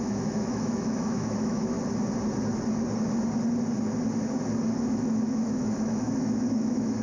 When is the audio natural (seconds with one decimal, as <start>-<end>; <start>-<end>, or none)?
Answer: 1.8-4.7